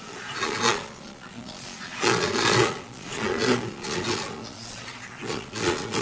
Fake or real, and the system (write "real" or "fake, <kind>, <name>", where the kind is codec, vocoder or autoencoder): fake, vocoder, Vocos